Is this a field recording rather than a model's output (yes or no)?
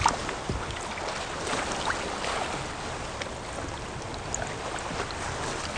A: yes